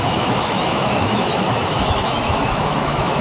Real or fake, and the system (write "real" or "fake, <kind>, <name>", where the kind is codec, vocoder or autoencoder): fake, autoencoder, DAC-VAE